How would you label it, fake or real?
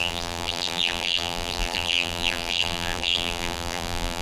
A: fake